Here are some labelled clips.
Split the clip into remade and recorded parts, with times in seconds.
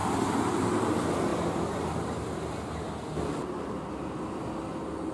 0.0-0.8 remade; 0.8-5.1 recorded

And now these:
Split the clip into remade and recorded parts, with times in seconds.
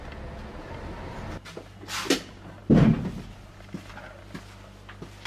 0.0-5.3 recorded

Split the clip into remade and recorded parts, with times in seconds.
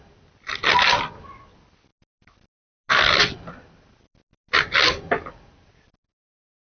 0.0-6.8 recorded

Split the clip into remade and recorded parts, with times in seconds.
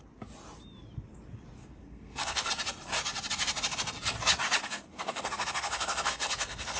0.0-1.6 recorded; 1.6-2.5 remade; 2.5-4.6 recorded; 4.6-6.8 remade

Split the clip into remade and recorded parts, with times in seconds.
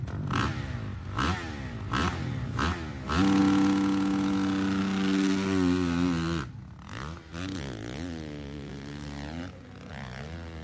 0.0-10.6 recorded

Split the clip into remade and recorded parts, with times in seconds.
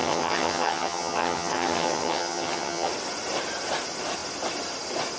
0.0-2.9 remade; 2.9-5.2 recorded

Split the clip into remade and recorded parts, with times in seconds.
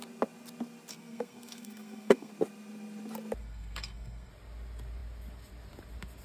0.0-0.9 recorded; 0.9-2.3 remade; 2.3-3.4 recorded; 3.4-4.3 remade; 4.3-6.2 recorded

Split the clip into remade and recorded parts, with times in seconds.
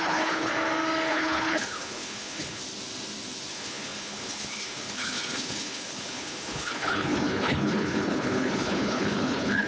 0.0-0.5 remade; 0.5-1.1 recorded; 1.1-2.6 remade; 2.6-3.5 recorded; 3.5-9.7 remade